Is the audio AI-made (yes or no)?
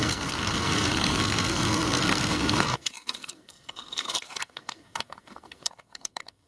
yes